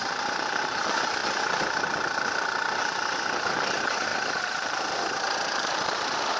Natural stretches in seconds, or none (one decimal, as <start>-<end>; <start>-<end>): none